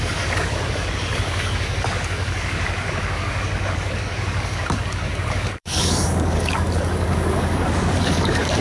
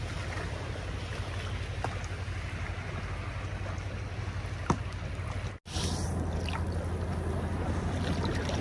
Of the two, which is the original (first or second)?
second